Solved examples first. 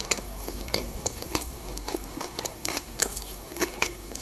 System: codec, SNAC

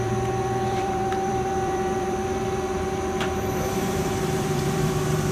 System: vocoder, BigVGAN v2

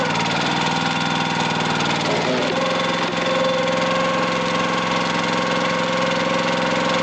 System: none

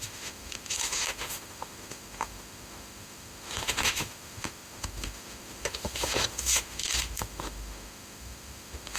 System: autoencoder, DAC-VAE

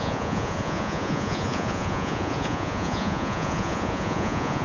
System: vocoder, Vocos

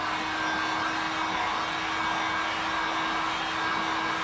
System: none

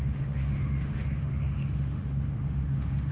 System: autoencoder, DAC-VAE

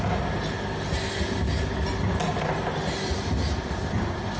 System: none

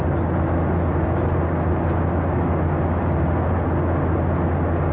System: none